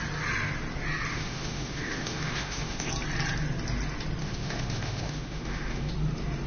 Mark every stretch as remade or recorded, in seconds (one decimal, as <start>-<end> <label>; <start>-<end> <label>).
0.0-1.1 recorded; 1.1-2.9 remade; 2.9-4.2 recorded; 4.2-5.9 remade; 5.9-6.5 recorded